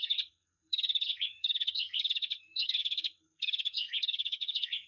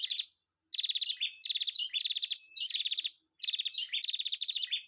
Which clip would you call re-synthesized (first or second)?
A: first